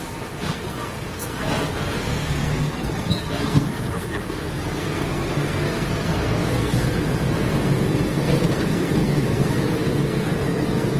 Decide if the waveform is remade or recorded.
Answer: remade